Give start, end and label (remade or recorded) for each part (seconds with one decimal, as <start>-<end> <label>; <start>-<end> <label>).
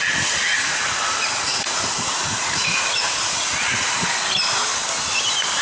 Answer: 0.0-0.5 recorded; 0.5-3.9 remade; 3.9-5.6 recorded